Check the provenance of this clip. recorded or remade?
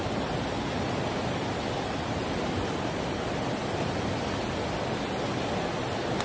recorded